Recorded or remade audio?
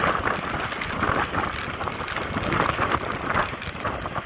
recorded